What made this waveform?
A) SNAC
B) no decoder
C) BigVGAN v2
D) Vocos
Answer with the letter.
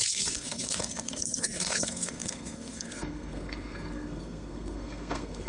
A